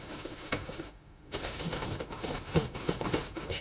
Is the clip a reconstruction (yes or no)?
yes